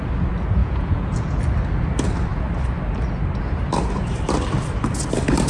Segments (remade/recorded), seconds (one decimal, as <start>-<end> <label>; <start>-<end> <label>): 0.0-0.6 recorded; 0.6-1.4 remade; 1.4-5.5 recorded